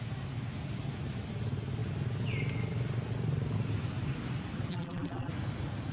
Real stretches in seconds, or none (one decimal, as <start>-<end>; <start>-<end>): 0.0-4.7; 5.3-5.9